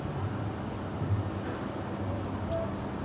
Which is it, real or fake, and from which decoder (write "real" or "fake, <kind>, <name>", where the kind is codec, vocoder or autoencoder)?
real